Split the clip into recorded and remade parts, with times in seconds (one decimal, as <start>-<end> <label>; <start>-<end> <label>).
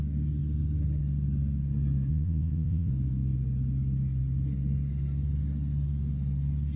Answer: 0.0-2.1 recorded; 2.1-2.9 remade; 2.9-6.8 recorded